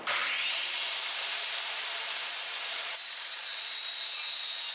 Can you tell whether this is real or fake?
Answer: fake